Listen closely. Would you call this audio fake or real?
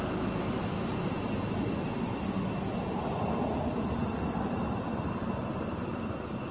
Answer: real